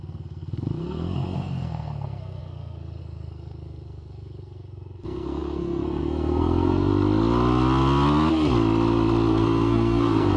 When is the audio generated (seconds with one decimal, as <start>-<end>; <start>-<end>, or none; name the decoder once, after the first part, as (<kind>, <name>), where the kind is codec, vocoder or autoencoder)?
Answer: 0.0-6.9 (codec, SNAC); 9.3-10.4